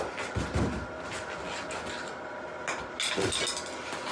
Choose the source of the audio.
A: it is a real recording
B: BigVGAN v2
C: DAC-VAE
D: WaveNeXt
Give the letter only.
A